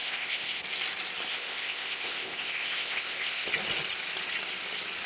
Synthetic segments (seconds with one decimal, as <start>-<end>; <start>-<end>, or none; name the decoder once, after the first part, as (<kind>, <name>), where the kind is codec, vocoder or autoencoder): 0.0-0.6 (codec, ZipCodec); 1.3-3.5